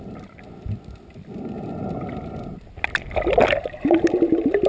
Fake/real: real